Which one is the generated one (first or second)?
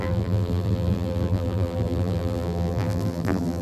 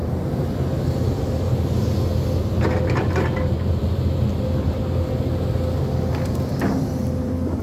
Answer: first